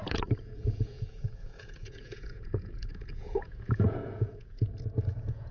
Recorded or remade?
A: remade